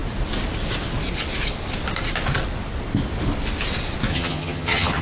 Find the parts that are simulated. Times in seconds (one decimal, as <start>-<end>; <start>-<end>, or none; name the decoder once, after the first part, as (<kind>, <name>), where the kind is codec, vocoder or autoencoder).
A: 4.1-5.0 (vocoder, HiFi-GAN)